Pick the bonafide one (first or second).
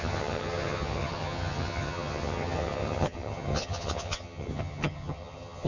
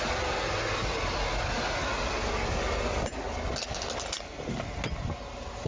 second